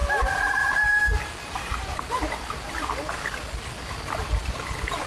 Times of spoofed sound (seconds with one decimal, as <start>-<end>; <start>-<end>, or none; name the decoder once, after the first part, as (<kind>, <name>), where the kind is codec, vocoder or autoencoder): 1.7-3.3 (vocoder, BigVGAN v2)